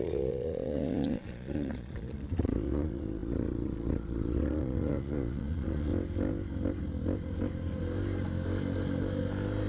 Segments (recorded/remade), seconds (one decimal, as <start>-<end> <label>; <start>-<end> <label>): 0.0-5.9 remade; 5.9-9.7 recorded